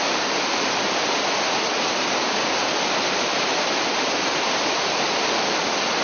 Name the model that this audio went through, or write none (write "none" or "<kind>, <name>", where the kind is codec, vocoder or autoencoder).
none